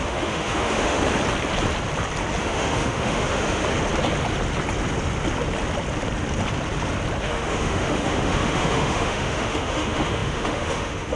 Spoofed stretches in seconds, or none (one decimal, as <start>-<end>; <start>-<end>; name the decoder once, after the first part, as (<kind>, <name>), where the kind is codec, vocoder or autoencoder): 0.0-1.0 (autoencoder, DAC-VAE); 2.4-3.6; 7.2-11.2